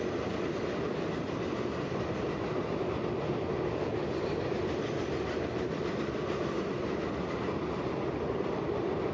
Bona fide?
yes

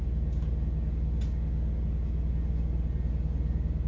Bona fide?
yes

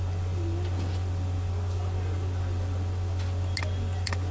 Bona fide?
yes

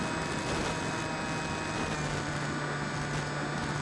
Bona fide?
yes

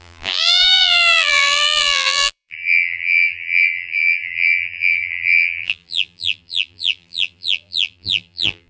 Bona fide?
no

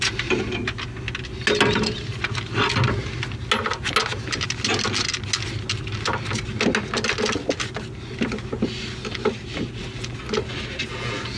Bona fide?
yes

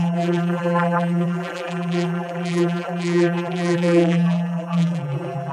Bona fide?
no